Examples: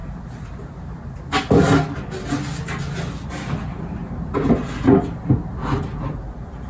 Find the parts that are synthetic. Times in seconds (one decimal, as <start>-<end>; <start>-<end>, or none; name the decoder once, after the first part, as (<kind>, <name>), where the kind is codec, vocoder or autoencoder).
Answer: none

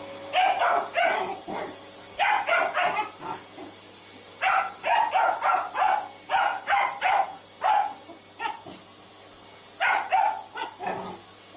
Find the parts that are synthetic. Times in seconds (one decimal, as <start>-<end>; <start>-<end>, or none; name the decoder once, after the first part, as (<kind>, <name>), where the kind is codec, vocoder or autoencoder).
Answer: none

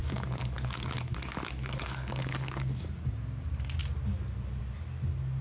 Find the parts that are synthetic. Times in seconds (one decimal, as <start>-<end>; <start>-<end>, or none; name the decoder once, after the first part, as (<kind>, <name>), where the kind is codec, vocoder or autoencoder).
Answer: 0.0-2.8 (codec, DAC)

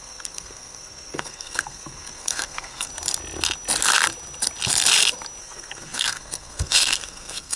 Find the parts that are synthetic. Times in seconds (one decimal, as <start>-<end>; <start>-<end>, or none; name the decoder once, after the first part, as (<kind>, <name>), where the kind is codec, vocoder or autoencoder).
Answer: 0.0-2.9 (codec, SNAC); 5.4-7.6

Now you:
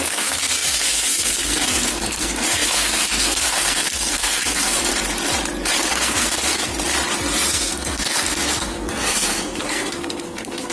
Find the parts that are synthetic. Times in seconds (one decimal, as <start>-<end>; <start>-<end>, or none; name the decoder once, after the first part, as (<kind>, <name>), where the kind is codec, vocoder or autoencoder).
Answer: 0.0-4.9 (codec, SNAC); 5.9-6.7; 7.5-10.7

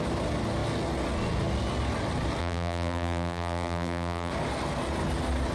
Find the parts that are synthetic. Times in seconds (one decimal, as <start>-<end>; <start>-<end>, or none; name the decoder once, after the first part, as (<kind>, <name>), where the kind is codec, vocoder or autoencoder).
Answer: 2.4-4.3 (vocoder, BigVGAN v2)

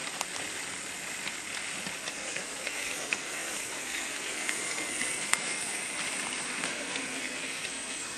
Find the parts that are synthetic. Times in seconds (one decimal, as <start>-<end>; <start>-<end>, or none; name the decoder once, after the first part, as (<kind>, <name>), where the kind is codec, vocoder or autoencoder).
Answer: 2.1-5.8 (codec, SNAC); 6.6-8.2